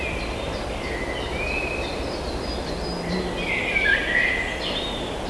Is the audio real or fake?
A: real